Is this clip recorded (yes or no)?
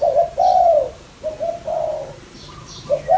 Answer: yes